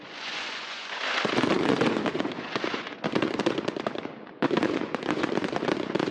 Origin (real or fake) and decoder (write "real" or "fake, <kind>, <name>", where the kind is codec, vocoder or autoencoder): fake, vocoder, Vocos